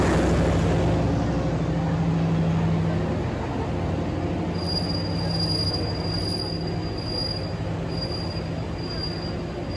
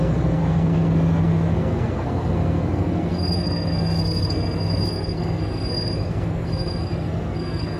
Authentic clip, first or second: first